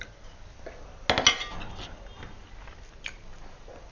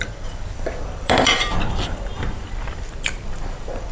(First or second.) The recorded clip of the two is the first